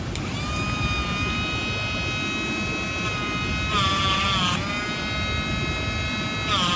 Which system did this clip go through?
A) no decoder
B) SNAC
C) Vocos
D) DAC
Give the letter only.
A